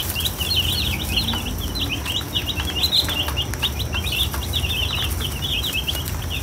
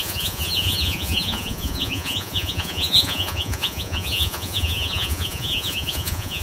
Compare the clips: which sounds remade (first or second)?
second